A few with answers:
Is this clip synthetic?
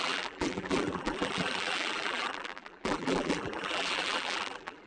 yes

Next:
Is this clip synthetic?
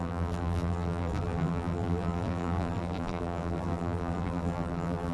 yes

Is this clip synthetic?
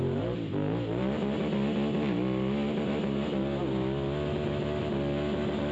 no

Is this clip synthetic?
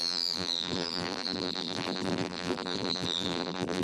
yes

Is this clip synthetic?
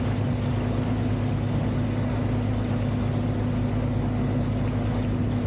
no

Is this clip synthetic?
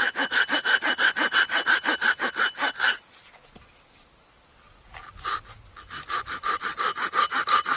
no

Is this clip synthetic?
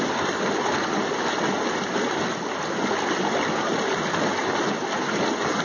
no